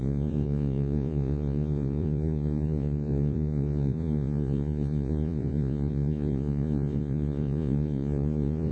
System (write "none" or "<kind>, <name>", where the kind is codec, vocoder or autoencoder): vocoder, Vocos